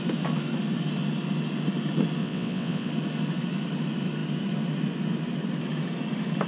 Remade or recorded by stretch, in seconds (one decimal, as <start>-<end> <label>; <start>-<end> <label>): 0.0-2.2 recorded; 2.2-2.9 remade; 2.9-6.5 recorded